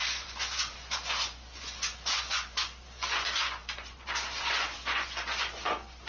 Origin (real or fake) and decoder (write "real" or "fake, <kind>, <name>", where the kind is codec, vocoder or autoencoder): fake, vocoder, Vocos